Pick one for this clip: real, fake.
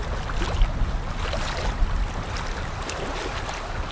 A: real